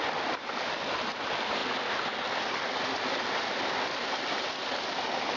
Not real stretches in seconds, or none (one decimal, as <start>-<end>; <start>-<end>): none